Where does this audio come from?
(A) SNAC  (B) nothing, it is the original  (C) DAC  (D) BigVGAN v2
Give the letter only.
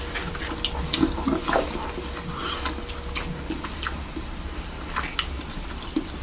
B